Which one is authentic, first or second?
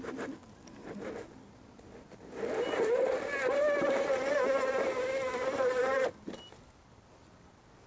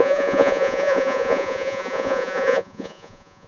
first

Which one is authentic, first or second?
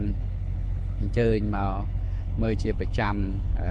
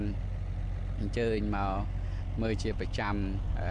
second